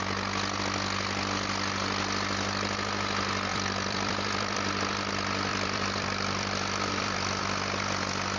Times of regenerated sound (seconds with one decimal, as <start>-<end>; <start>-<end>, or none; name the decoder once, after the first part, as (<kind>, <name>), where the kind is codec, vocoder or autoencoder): 3.5-5.1 (vocoder, BigVGAN v2); 5.5-7.4